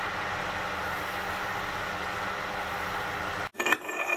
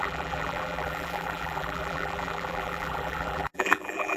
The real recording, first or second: first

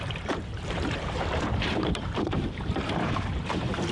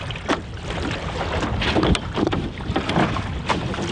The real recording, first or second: second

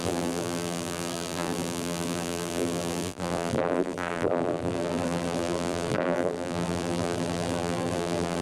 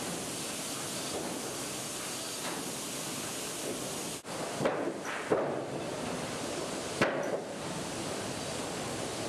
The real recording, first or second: second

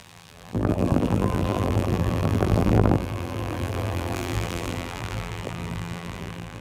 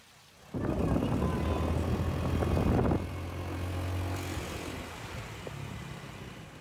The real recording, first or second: second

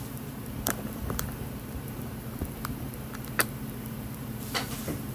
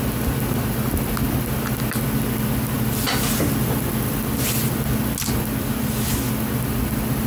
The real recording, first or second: second